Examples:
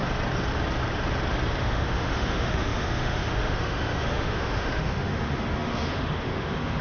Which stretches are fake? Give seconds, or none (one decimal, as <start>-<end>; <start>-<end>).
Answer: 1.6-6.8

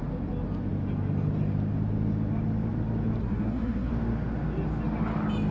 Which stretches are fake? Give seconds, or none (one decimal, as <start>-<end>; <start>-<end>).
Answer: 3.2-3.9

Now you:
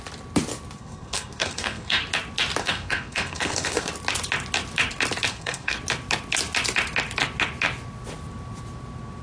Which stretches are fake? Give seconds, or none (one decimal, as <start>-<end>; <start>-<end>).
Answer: 0.8-2.0; 2.6-3.9; 5.3-5.8